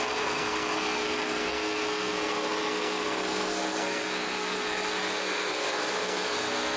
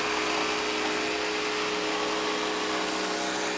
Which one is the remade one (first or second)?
first